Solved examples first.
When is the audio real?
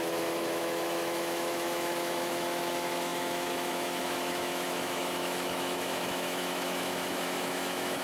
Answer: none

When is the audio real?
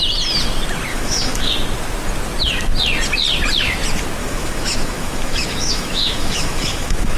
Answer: 0.0-0.9; 1.5-4.2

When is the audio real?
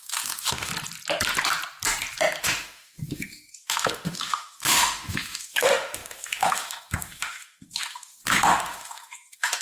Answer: 0.7-2.4